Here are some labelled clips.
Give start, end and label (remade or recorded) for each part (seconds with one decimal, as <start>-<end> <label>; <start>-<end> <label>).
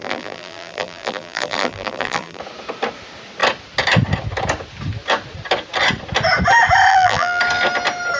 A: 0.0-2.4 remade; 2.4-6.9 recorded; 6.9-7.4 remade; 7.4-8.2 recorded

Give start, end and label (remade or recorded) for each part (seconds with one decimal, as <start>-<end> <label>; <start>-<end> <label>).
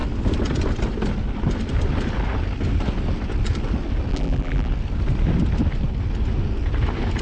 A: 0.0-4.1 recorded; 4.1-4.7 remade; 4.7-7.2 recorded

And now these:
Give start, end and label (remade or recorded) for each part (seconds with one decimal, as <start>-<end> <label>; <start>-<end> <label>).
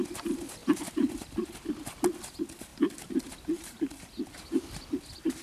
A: 0.0-5.4 recorded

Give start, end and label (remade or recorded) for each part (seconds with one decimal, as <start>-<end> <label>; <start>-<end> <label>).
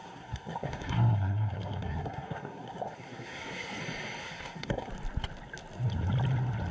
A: 0.0-3.8 remade; 3.8-4.2 recorded; 4.2-4.9 remade; 4.9-6.7 recorded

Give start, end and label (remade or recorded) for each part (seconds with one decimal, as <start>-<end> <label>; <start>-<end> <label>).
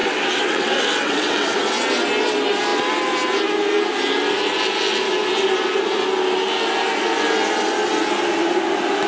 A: 0.0-1.7 remade; 1.7-9.1 recorded